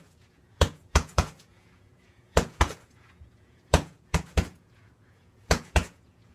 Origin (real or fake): fake